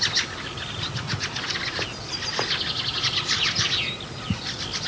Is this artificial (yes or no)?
no